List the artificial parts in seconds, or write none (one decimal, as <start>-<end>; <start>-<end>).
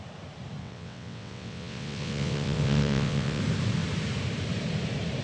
0.6-3.4